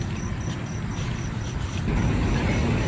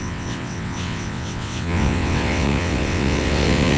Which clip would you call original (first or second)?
first